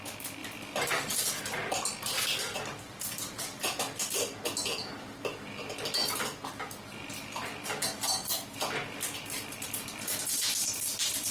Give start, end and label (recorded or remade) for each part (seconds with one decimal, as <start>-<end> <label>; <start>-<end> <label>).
0.0-11.3 recorded